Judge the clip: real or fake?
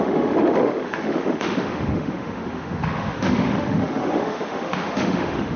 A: fake